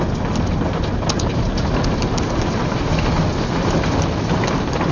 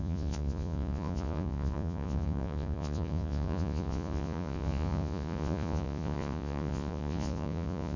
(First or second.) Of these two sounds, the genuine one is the first